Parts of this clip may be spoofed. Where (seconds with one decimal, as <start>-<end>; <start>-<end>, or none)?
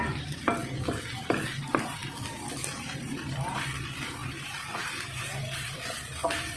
0.0-0.6; 1.5-2.0; 2.8-6.6